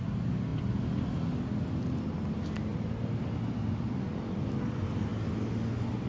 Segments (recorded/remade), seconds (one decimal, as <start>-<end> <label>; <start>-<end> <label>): 0.0-6.1 recorded